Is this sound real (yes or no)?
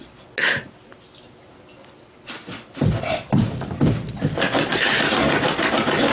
yes